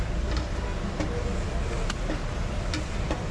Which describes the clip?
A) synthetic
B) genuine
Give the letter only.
B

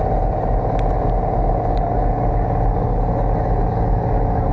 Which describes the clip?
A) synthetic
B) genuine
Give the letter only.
B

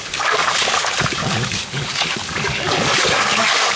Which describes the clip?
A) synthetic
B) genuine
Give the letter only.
A